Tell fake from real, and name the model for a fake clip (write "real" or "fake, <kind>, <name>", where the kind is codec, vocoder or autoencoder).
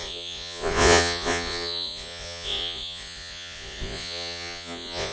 fake, vocoder, Vocos